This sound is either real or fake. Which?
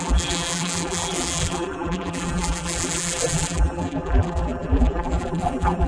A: fake